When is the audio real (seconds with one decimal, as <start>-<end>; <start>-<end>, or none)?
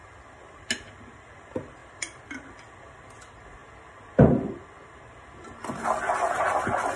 0.0-1.3; 3.6-6.6